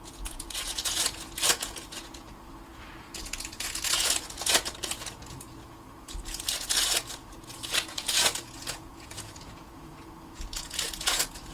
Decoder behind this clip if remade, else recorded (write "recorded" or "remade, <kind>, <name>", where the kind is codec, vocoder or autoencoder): remade, vocoder, Vocos